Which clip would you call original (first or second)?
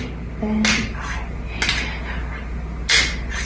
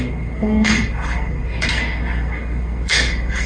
first